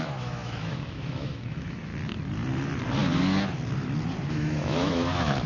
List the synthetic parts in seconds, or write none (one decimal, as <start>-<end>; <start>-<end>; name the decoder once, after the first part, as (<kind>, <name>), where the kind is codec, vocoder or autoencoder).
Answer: 0.0-1.9 (autoencoder, DAC-VAE); 4.3-5.5

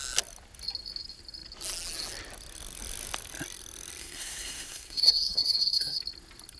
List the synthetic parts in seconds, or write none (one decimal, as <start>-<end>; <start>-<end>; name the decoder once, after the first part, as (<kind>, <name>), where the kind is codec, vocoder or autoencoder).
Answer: 4.0-6.0 (codec, SNAC)

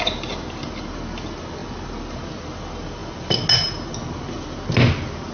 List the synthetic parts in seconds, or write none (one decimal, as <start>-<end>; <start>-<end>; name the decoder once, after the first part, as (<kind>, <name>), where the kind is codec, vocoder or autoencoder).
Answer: none

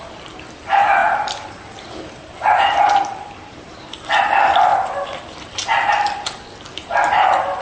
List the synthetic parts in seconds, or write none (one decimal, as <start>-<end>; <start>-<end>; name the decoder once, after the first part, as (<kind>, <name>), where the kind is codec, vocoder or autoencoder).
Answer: 1.0-3.9 (vocoder, BigVGAN v2)

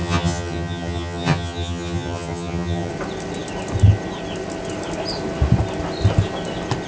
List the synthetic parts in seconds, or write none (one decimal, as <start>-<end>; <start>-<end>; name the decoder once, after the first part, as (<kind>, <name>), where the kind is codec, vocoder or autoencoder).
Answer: 0.0-2.9 (vocoder, HiFi-GAN)

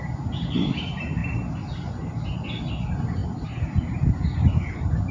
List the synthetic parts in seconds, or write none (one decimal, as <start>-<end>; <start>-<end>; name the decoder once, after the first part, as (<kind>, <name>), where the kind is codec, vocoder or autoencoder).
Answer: none

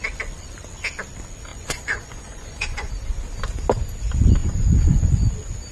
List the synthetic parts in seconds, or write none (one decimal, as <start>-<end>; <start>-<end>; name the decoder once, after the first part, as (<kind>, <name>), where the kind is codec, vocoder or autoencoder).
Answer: 1.5-2.9 (vocoder, Vocos); 4.4-5.3

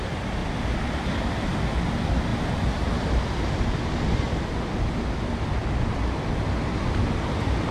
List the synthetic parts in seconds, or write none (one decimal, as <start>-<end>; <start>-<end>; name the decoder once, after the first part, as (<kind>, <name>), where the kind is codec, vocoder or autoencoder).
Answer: 0.4-1.2 (vocoder, BigVGAN v2); 2.3-3.6